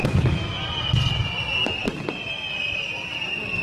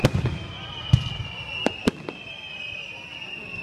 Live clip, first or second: first